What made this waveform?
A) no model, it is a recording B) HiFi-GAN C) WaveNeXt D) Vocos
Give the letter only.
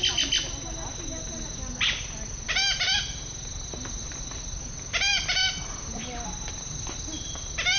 A